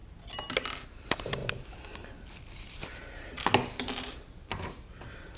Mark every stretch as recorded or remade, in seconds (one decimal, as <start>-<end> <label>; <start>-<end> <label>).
0.0-0.9 recorded; 0.9-1.4 remade; 1.4-4.6 recorded; 4.6-5.4 remade

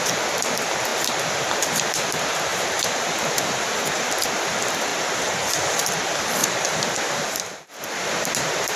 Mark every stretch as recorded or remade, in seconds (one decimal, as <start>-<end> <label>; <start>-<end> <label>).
0.0-2.5 recorded; 2.5-3.6 remade; 3.6-6.4 recorded; 6.4-7.8 remade; 7.8-8.8 recorded

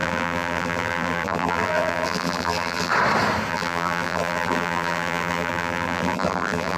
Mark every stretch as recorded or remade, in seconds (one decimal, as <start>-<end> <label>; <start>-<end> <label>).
0.0-2.9 remade; 2.9-3.5 recorded; 3.5-6.8 remade

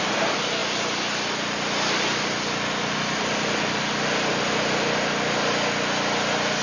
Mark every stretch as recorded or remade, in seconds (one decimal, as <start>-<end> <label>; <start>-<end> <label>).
0.0-6.6 recorded

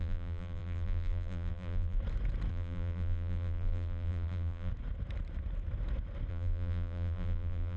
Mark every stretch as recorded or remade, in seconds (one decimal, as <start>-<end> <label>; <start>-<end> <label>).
0.0-2.0 remade; 2.0-2.5 recorded; 2.5-4.7 remade; 4.7-6.3 recorded; 6.3-7.8 remade